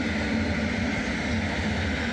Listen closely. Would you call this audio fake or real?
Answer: real